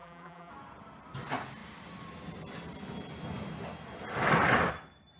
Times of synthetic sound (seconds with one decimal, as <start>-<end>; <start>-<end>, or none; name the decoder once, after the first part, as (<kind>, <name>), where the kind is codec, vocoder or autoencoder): 0.0-0.5 (vocoder, BigVGAN v2)